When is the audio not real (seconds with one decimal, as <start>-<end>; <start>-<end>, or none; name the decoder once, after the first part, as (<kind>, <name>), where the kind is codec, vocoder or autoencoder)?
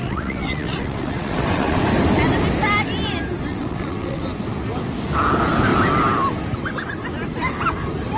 0.0-1.8 (vocoder, WaveNeXt); 3.5-4.2